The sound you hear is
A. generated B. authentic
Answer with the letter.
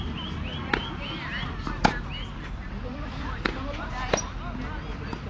B